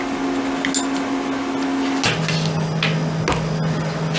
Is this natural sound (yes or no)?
yes